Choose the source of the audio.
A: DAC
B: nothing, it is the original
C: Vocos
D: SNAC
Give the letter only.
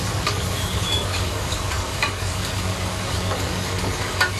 A